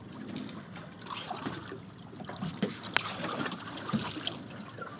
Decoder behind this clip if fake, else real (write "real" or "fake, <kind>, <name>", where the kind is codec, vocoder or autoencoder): real